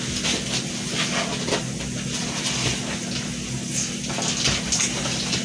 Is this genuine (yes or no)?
yes